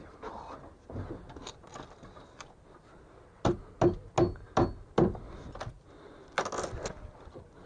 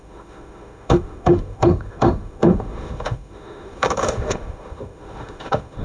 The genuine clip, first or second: first